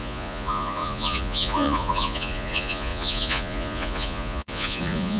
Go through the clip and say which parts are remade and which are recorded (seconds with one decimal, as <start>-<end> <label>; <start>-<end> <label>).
0.0-5.2 remade